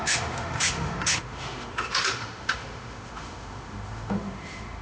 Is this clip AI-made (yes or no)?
yes